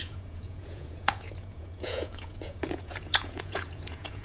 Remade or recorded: remade